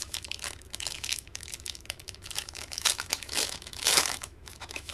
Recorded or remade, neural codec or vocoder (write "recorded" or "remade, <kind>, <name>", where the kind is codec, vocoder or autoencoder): remade, autoencoder, DAC-VAE